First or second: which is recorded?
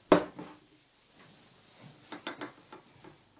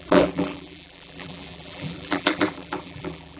first